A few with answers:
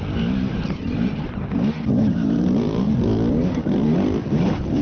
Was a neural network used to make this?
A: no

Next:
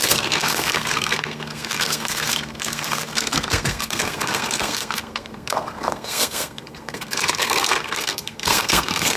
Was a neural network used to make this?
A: yes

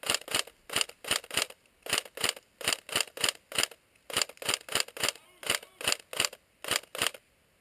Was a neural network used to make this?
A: no